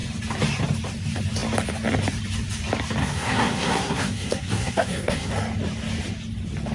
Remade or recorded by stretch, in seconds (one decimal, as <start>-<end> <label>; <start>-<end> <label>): 0.0-3.0 recorded; 3.0-5.3 remade; 5.3-6.7 recorded